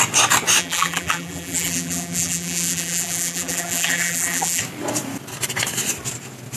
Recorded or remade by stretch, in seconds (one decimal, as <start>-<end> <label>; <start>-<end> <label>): 0.0-0.6 recorded; 0.6-4.6 remade; 4.6-6.6 recorded